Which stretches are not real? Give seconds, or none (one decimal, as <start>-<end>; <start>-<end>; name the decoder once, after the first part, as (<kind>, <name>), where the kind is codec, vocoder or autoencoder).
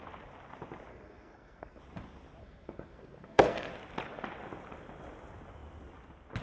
0.9-1.8 (codec, SNAC); 2.4-3.7